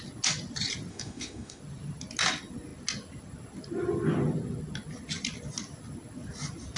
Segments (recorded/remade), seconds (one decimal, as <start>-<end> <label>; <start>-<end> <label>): 0.0-0.9 recorded; 0.9-1.6 remade; 1.6-6.8 recorded